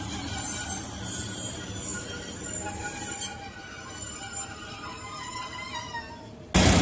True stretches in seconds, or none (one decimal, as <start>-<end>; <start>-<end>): 0.0-6.8